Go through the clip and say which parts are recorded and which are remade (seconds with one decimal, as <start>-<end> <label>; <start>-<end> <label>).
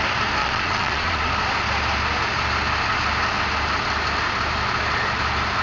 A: 0.0-0.4 recorded; 0.4-1.3 remade; 1.3-5.6 recorded